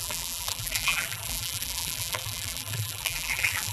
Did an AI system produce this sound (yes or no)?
yes